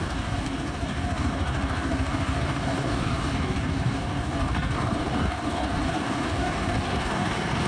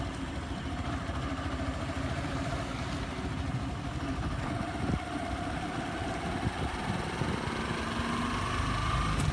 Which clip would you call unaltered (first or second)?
second